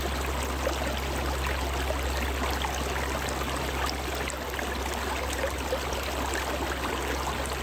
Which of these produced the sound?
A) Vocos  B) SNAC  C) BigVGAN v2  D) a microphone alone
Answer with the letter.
D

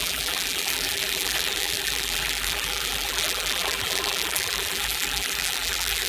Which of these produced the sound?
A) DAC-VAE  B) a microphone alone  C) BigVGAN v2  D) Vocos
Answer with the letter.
C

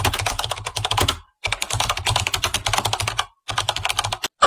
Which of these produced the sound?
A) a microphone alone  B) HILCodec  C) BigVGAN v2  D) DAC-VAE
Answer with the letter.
A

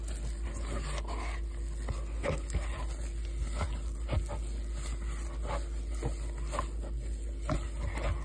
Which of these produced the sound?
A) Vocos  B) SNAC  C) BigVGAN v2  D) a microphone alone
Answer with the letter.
D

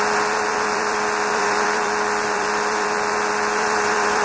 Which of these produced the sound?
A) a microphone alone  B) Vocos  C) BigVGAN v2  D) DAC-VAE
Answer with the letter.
C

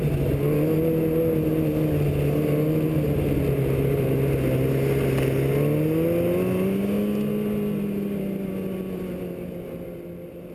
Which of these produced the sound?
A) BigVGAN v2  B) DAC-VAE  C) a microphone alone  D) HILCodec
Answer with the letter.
C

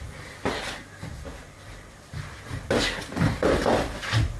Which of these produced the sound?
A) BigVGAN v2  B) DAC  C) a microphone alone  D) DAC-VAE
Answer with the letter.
A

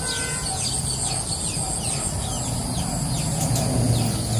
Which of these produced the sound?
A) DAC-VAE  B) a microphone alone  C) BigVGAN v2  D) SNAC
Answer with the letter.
B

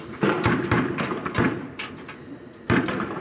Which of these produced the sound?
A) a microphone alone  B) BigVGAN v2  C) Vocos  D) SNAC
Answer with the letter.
A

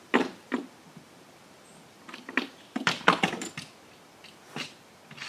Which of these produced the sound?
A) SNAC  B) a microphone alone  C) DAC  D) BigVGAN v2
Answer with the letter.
D